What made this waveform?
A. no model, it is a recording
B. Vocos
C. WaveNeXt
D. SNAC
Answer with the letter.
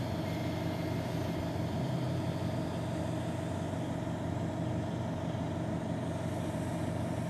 A